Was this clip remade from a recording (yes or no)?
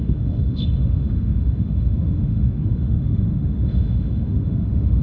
yes